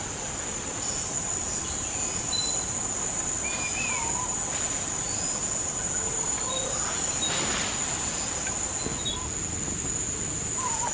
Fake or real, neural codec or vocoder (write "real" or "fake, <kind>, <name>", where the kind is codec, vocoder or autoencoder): real